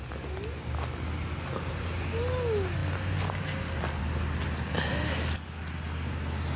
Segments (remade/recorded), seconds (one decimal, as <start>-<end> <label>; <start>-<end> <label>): 0.0-6.6 recorded